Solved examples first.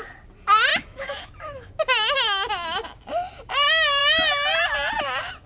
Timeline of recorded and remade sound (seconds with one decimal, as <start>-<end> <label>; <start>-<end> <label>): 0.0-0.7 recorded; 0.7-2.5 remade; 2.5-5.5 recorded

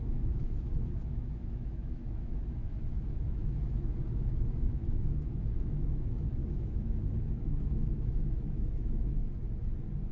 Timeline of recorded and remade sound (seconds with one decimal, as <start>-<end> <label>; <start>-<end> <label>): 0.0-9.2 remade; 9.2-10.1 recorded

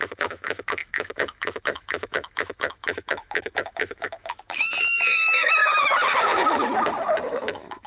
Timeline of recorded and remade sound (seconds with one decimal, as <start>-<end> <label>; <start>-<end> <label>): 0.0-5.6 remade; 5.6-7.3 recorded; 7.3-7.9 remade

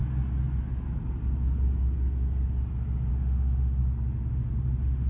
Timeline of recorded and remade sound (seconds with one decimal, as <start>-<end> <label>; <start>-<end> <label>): 0.0-3.1 recorded; 3.1-3.8 remade; 3.8-4.3 recorded; 4.3-5.1 remade